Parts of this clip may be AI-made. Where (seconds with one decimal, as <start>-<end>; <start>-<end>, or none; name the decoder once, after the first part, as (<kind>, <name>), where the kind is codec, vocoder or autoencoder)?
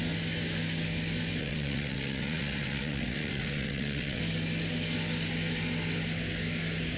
1.4-4.2 (vocoder, WaveNeXt)